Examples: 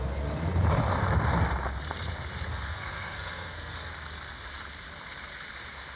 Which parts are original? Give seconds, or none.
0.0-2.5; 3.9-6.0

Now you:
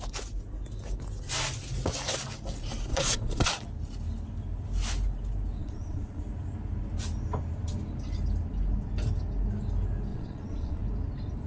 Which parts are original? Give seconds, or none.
0.0-2.9; 3.4-5.6; 6.2-10.1; 10.8-11.5